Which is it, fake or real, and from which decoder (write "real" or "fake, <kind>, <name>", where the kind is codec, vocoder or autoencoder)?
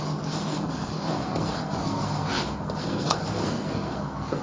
fake, codec, SNAC